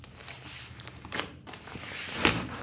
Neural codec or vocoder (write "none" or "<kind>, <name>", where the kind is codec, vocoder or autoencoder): vocoder, BigVGAN v2